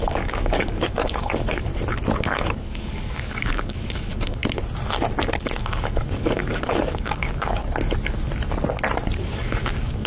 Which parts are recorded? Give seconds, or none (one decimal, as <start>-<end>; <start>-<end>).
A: 1.7-2.2; 4.4-5.6; 7.6-9.2